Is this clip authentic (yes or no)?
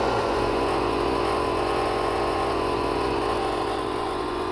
no